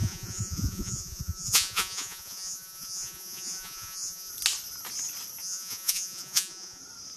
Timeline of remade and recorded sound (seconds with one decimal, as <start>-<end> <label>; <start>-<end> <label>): 0.0-4.3 remade; 4.3-5.4 recorded; 5.4-6.8 remade; 6.8-7.2 recorded

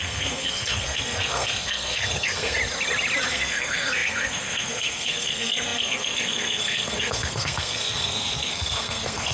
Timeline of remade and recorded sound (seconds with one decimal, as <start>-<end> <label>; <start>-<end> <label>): 0.0-2.6 remade; 2.6-3.3 recorded; 3.3-9.3 remade

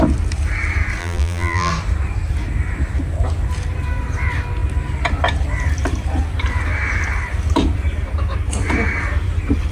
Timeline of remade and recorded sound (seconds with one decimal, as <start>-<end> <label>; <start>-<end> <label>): 0.0-1.0 recorded; 1.0-1.7 remade; 1.7-9.7 recorded

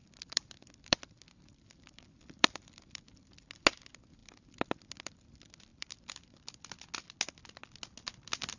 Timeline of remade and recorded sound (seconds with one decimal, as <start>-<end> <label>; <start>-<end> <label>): 0.0-3.0 remade; 3.0-5.7 recorded; 5.7-6.7 remade; 6.7-8.6 recorded